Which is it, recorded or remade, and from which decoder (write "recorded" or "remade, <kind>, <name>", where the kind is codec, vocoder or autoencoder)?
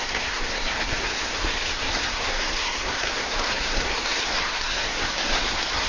remade, codec, SNAC